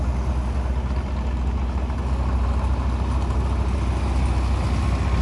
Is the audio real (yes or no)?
yes